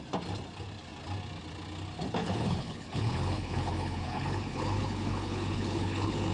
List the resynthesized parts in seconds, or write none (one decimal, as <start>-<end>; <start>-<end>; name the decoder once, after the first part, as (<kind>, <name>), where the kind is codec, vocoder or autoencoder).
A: 2.2-6.3 (codec, HILCodec)